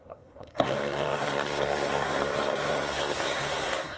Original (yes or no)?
no